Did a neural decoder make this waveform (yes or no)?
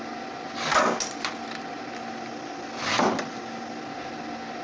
no